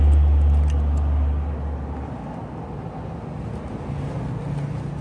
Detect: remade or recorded recorded